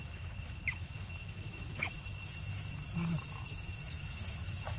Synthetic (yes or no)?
yes